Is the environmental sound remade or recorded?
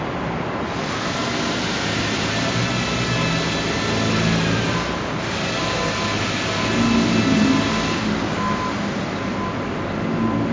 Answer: recorded